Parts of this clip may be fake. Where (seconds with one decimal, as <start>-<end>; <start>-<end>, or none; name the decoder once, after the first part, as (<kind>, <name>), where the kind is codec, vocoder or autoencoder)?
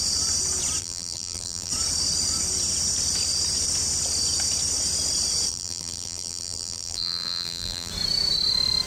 0.8-1.7 (vocoder, BigVGAN v2); 5.5-7.9